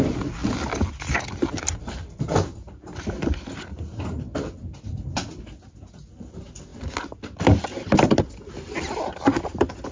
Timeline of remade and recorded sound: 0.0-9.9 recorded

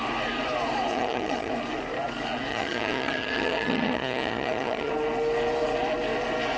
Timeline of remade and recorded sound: 0.0-0.9 recorded; 0.9-1.5 remade; 1.5-2.5 recorded; 2.5-4.9 remade; 4.9-6.6 recorded